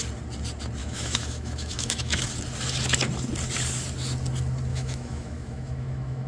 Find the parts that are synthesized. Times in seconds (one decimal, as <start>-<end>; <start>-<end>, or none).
0.8-2.2; 4.7-6.3